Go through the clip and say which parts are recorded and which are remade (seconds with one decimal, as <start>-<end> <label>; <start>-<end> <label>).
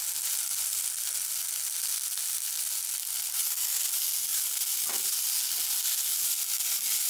0.0-7.1 recorded